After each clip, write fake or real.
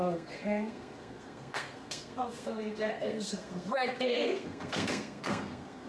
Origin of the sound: fake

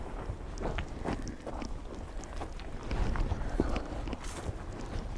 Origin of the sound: real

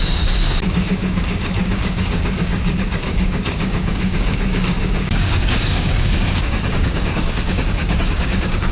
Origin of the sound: fake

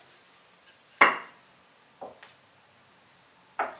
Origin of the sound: real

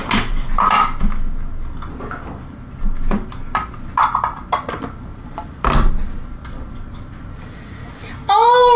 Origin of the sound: real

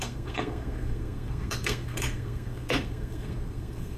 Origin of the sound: fake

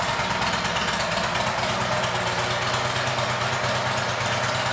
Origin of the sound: real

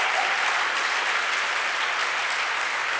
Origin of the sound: real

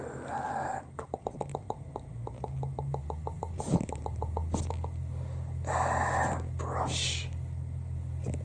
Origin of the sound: real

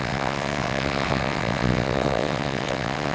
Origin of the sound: fake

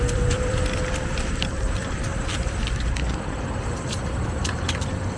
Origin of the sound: fake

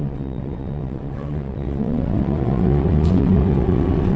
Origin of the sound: fake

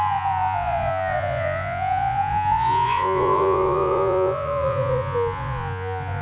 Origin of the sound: fake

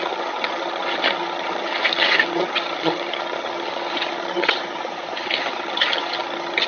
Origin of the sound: fake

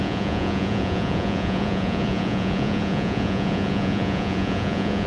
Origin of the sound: fake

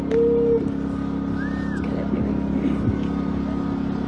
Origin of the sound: real